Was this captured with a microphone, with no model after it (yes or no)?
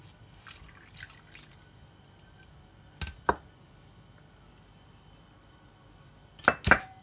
yes